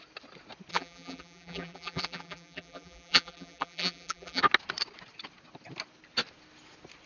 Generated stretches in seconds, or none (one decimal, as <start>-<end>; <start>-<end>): 0.7-4.4